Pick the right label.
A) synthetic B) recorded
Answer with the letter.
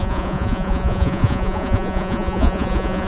A